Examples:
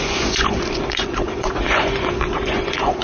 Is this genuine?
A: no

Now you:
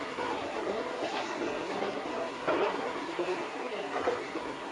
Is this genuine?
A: no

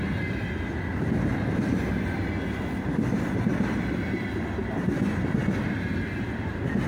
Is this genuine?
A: yes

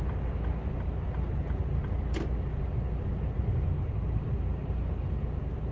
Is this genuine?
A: yes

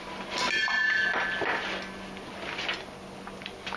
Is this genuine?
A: yes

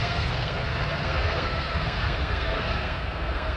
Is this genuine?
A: no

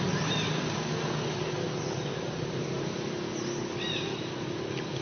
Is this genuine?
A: yes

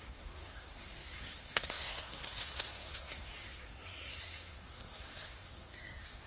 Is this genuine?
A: no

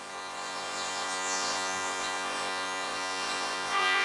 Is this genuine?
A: no